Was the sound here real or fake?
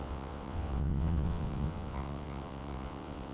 fake